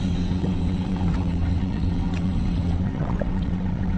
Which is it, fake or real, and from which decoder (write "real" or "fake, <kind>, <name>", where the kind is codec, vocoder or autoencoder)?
fake, vocoder, WaveNeXt